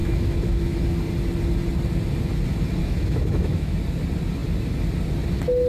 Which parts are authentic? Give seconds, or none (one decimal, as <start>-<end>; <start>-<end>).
0.8-2.8; 3.8-5.7